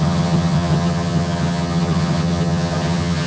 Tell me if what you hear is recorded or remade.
remade